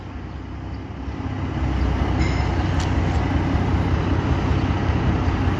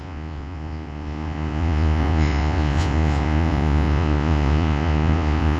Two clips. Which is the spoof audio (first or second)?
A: second